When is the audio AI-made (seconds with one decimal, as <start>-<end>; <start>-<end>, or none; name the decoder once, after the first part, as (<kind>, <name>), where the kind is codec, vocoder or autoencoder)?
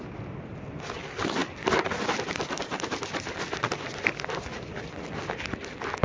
none